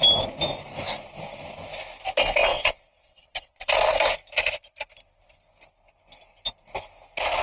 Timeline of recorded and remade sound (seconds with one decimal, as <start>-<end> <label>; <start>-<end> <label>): 0.0-2.5 recorded; 2.5-3.7 remade; 3.7-7.4 recorded